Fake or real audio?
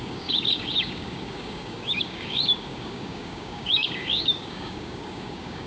fake